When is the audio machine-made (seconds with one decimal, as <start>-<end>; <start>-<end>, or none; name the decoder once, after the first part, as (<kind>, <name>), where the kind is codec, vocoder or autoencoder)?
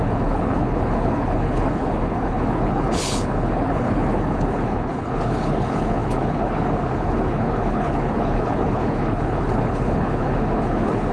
0.0-11.1 (codec, HILCodec)